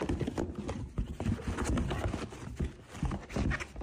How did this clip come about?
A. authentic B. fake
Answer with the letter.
A